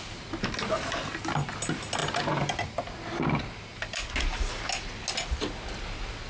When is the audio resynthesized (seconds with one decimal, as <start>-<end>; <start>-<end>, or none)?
none